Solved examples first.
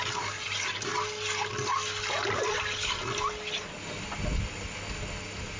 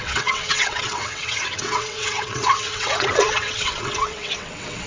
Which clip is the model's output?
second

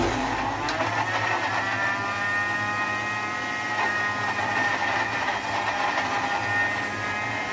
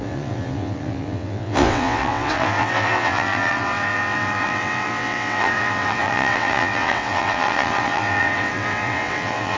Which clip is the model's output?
second